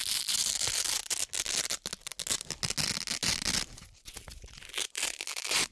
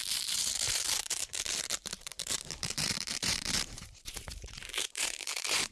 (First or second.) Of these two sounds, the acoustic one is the first